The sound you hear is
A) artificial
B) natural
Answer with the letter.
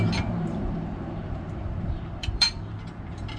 A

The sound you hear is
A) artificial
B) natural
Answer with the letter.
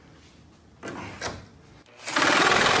B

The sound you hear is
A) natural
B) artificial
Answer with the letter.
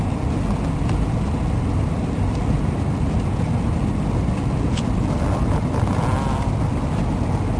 A